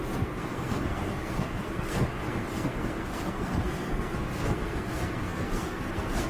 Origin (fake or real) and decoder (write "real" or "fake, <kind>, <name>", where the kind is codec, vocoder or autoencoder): fake, codec, SNAC